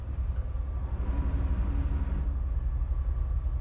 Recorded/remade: recorded